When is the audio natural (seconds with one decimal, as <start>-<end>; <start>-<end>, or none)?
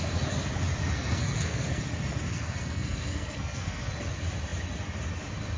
0.0-0.8; 1.8-2.3; 3.9-5.6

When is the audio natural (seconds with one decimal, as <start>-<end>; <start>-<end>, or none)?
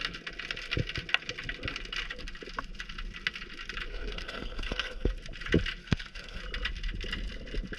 0.0-3.9; 5.1-5.8; 6.4-7.8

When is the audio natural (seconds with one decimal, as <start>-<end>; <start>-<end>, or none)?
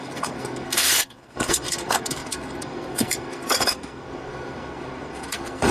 none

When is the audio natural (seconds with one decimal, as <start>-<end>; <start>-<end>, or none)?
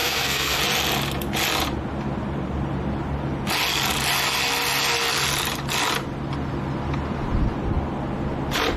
0.6-8.8